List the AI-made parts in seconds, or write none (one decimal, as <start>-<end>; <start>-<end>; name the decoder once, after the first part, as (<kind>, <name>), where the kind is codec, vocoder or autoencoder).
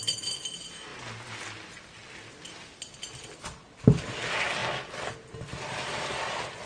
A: none